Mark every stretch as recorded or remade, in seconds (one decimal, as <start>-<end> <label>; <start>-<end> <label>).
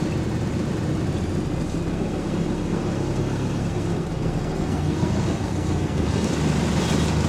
0.0-1.9 recorded; 1.9-6.3 remade; 6.3-7.3 recorded